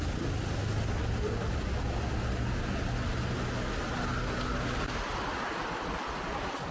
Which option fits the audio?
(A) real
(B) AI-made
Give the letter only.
A